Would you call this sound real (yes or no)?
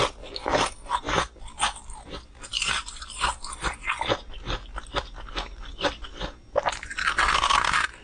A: yes